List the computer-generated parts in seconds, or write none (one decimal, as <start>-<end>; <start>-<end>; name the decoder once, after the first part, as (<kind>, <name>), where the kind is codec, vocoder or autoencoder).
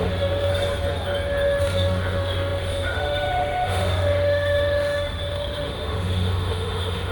0.0-0.5 (autoencoder, DAC-VAE); 1.6-7.1